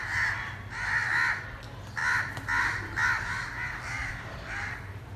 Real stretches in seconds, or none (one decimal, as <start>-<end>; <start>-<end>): 0.0-2.0